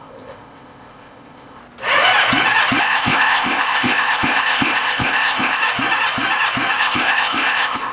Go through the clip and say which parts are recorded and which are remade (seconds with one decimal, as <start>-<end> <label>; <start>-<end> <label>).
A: 0.0-1.6 remade; 1.6-2.8 recorded; 2.8-5.6 remade; 5.6-6.8 recorded; 6.8-7.9 remade